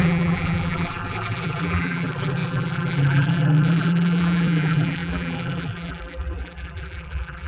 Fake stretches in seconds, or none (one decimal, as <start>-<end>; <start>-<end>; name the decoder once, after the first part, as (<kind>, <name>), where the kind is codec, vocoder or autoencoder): 0.0-7.5 (vocoder, BigVGAN v2)